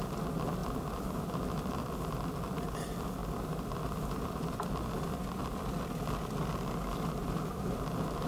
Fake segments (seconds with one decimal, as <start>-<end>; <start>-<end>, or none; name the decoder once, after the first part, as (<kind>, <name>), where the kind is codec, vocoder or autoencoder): 0.6-2.0 (vocoder, BigVGAN v2); 3.2-5.7; 7.2-8.3